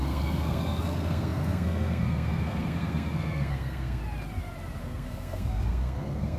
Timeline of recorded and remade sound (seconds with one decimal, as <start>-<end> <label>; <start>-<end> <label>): 0.0-4.0 remade; 4.0-4.8 recorded; 4.8-6.4 remade